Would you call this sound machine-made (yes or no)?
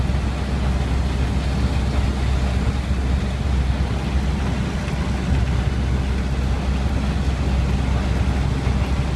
no